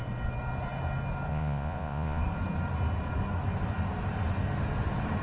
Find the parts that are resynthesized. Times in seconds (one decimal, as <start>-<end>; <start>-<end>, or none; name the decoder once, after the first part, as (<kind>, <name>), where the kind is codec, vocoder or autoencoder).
1.3-2.2 (vocoder, Vocos)